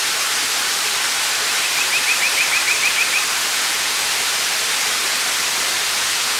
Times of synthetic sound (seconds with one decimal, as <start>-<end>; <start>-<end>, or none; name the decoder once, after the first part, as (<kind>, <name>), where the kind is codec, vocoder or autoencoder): 3.5-4.0 (vocoder, Vocos); 5.9-6.4